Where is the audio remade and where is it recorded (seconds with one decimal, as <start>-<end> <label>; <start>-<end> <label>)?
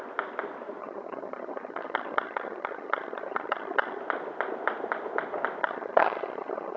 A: 0.0-0.8 recorded; 0.8-4.0 remade; 4.0-5.6 recorded; 5.6-6.8 remade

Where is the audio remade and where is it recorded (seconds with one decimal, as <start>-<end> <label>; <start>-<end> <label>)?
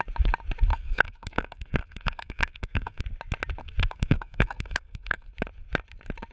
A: 0.0-0.7 recorded; 0.7-3.0 remade; 3.0-3.6 recorded; 3.6-5.3 remade; 5.3-6.3 recorded